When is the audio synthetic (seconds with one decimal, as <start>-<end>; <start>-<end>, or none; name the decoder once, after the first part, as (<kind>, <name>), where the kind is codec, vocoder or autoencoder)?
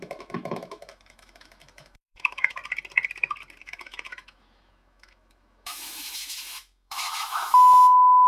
0.0-2.6 (autoencoder, DAC-VAE); 3.6-8.3